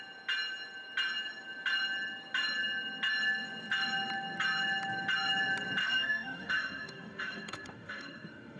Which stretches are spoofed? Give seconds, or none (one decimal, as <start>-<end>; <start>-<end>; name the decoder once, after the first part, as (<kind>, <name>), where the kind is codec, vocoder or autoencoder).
5.8-8.6 (autoencoder, DAC-VAE)